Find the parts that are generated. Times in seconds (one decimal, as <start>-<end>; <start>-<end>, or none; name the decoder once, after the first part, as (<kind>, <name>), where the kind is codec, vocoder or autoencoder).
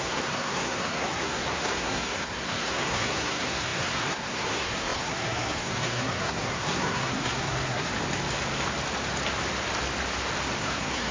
0.0-7.9 (codec, SNAC); 10.6-11.1